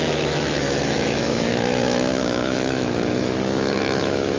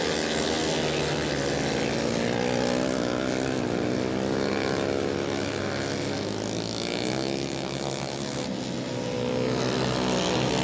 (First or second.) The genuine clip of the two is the second